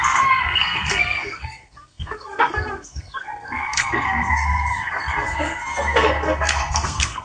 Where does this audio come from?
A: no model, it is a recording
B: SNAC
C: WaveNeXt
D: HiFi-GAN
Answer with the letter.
B